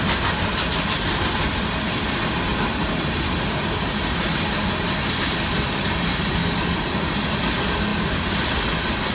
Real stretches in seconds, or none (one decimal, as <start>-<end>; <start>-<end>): 0.0-9.1